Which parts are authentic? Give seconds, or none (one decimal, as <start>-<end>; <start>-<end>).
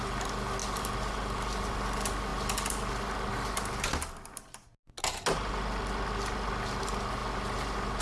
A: 0.0-8.0